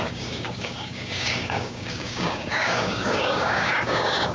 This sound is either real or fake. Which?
fake